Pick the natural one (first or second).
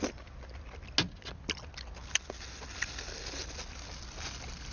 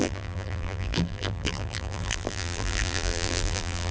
first